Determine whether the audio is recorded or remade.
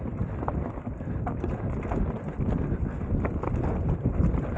recorded